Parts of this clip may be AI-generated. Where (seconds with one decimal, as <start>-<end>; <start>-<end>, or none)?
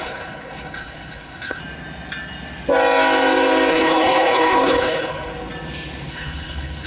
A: 0.0-1.6; 3.7-5.3; 6.1-6.9